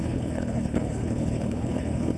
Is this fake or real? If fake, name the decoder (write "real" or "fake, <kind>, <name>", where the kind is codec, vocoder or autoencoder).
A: fake, codec, HILCodec